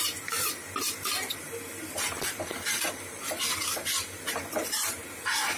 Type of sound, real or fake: real